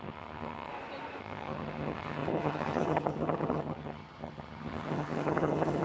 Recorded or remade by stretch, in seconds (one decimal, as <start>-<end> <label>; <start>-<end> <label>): 0.0-0.7 remade; 0.7-1.2 recorded; 1.2-5.8 remade